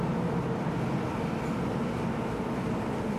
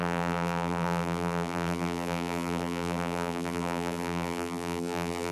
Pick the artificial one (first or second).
second